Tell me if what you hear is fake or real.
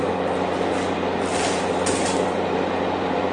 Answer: fake